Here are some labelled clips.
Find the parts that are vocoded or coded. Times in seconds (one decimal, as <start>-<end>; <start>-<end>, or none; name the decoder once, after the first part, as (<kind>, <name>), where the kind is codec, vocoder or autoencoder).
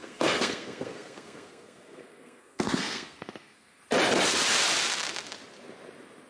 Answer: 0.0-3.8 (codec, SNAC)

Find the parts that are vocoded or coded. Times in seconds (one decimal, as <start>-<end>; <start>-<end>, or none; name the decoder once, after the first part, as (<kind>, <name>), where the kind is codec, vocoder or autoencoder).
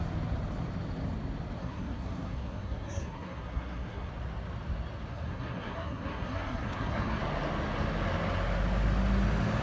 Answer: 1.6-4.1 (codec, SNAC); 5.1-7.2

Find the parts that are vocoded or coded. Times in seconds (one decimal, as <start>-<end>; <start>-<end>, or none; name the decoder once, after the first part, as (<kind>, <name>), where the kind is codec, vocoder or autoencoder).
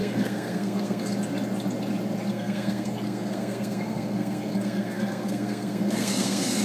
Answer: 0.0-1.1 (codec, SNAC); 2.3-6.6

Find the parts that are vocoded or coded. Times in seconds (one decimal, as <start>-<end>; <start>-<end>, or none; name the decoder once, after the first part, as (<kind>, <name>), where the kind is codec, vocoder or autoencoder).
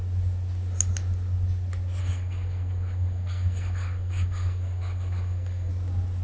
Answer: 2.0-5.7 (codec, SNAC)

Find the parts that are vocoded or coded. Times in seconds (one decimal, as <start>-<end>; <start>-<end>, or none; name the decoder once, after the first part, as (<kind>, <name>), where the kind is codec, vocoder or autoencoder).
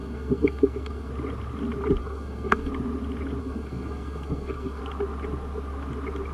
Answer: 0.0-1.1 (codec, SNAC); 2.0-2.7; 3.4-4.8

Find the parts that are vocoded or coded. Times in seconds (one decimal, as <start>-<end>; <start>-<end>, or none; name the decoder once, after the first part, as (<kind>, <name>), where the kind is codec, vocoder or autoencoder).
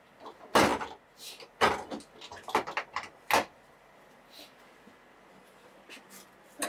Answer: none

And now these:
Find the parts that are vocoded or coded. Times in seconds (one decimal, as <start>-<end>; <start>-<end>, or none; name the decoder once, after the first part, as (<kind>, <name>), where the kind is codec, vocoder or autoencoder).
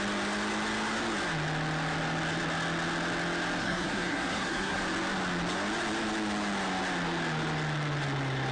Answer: 3.6-4.8 (codec, SNAC)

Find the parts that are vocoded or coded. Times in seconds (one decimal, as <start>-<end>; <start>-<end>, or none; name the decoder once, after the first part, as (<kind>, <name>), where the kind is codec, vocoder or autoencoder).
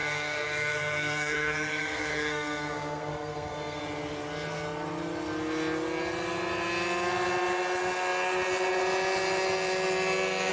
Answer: 0.0-3.8 (codec, SNAC)